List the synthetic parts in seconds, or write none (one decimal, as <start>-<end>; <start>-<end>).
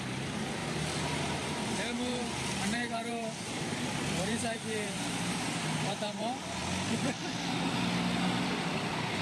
0.0-6.6; 8.6-9.2